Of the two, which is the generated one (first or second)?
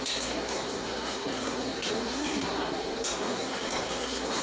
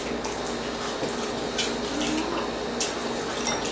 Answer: first